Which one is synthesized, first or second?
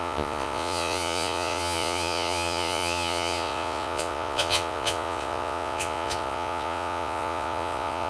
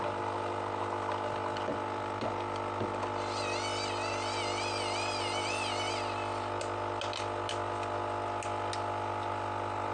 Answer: first